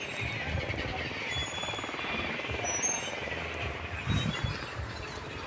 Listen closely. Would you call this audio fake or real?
real